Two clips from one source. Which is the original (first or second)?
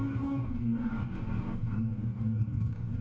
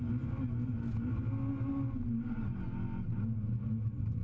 second